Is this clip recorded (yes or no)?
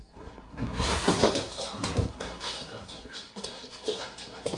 no